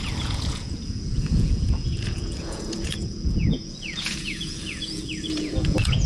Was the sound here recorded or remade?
remade